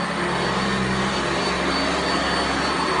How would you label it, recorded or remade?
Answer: recorded